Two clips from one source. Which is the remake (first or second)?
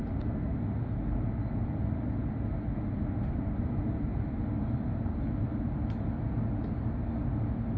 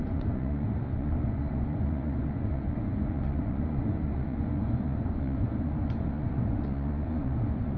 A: second